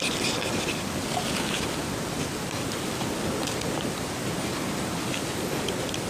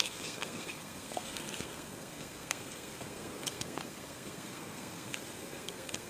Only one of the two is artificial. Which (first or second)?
second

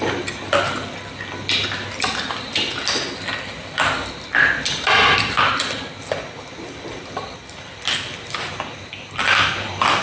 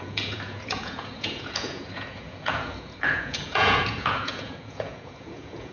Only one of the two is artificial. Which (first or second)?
second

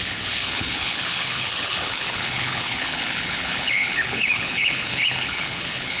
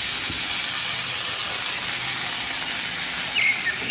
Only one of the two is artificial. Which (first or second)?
first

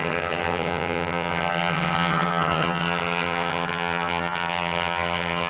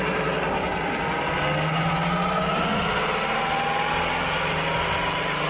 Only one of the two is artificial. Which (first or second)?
first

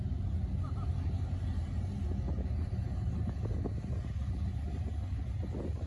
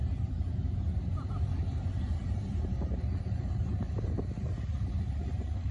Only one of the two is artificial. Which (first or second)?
second